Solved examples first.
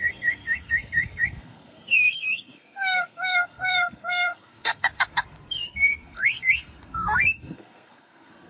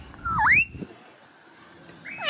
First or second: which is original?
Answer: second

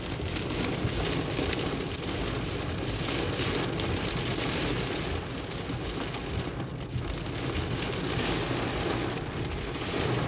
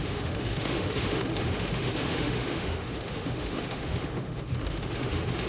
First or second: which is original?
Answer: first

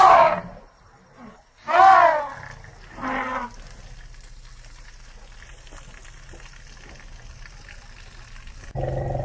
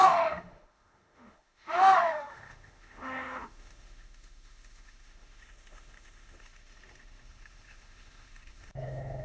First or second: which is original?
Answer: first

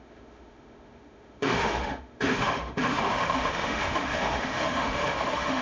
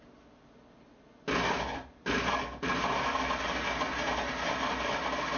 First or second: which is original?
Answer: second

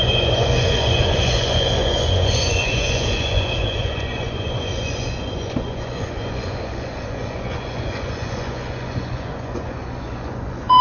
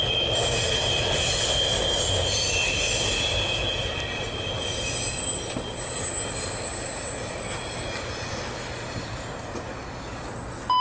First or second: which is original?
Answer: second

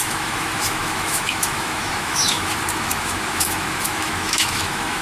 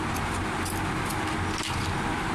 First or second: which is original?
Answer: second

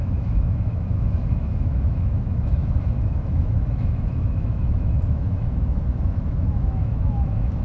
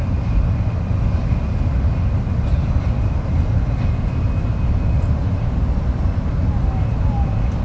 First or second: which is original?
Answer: second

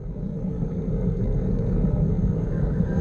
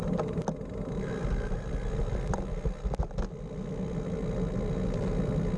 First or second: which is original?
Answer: second